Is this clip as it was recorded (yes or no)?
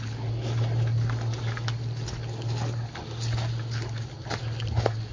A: yes